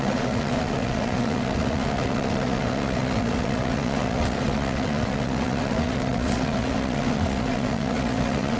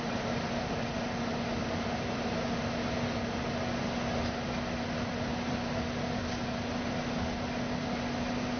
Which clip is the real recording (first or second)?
second